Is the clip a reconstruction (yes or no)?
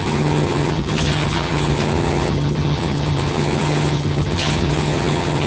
yes